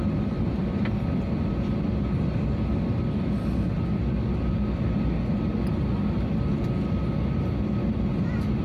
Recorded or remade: recorded